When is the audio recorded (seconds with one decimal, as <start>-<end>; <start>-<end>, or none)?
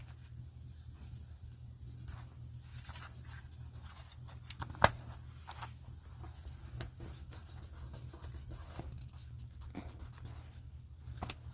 0.0-9.2; 10.0-11.5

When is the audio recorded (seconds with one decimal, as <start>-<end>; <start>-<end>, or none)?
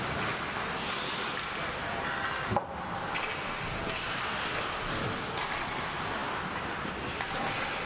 0.0-7.9